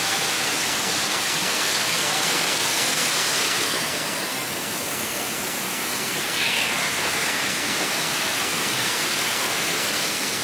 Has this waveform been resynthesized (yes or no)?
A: yes